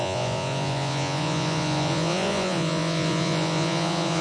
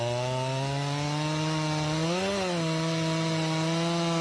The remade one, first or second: first